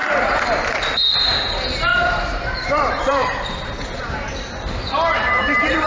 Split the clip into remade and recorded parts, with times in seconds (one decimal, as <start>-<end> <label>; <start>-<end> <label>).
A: 0.0-0.6 recorded; 0.6-5.9 remade